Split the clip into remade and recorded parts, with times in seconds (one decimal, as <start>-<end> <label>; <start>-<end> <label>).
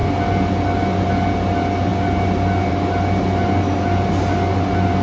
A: 0.0-5.0 recorded